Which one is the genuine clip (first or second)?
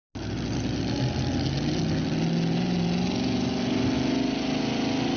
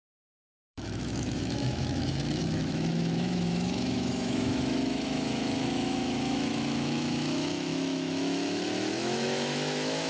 first